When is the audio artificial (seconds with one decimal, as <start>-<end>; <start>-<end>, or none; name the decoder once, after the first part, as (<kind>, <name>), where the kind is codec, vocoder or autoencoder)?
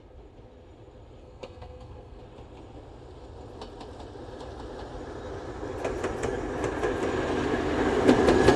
1.2-2.2 (codec, SNAC)